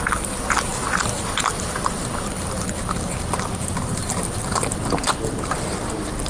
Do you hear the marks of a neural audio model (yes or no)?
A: no